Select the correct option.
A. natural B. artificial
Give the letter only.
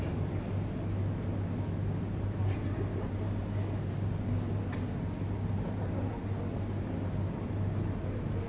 A